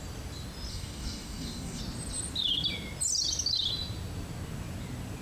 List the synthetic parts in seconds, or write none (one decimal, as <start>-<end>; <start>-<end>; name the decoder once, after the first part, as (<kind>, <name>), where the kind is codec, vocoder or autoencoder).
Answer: 0.7-1.8 (codec, DAC)